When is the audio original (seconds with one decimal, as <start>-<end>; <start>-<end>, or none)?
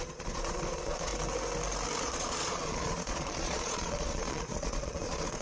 1.1-2.0